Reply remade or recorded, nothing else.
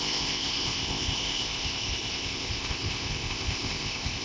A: remade